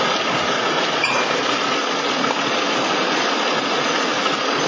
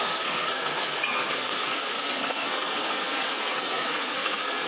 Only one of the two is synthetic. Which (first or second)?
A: second